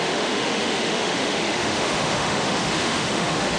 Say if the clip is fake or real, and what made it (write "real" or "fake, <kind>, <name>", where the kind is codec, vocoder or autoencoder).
fake, autoencoder, DAC-VAE